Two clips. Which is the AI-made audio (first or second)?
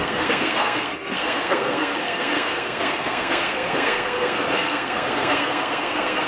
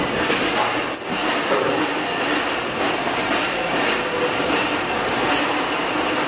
first